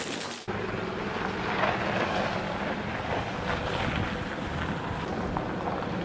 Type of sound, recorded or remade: recorded